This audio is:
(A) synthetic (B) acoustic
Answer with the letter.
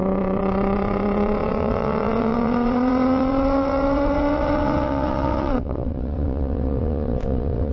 A